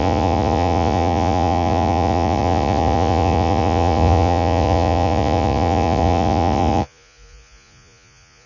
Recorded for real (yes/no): no